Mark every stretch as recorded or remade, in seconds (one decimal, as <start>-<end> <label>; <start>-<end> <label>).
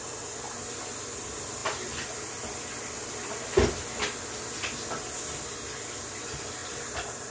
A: 0.0-7.3 recorded